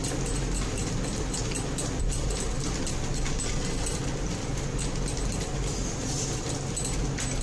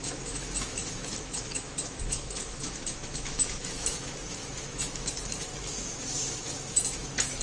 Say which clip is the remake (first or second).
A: second